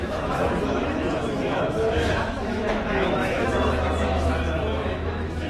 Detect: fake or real fake